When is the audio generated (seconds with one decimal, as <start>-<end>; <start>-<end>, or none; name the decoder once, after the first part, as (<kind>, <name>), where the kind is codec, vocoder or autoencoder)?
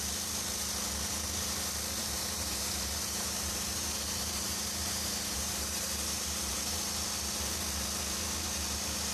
2.0-6.5 (vocoder, BigVGAN v2)